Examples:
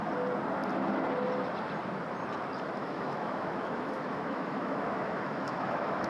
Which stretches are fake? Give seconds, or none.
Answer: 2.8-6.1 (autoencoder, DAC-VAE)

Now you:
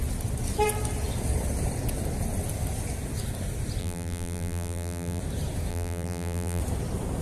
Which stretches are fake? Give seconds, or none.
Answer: 3.8-5.2 (vocoder, BigVGAN v2); 5.7-6.6

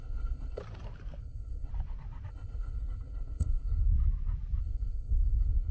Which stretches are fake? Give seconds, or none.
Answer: 0.0-0.6 (codec, SNAC); 1.2-1.7; 2.3-3.9; 4.6-5.7

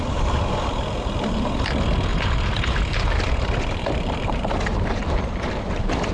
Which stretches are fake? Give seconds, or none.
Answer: 0.0-0.7 (vocoder, BigVGAN v2); 2.1-6.1

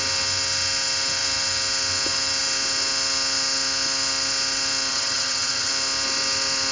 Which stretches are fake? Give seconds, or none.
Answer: 4.9-5.7 (vocoder, HiFi-GAN)